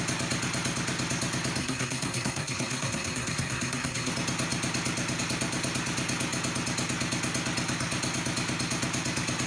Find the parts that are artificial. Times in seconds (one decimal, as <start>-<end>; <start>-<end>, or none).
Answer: 1.6-4.1